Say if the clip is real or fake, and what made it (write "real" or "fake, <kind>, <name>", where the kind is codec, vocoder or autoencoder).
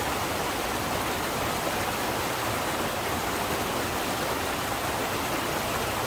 real